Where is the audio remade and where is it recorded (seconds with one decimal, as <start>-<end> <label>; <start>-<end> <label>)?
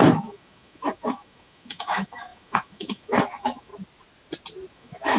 0.0-3.7 remade; 3.7-4.7 recorded; 4.7-5.2 remade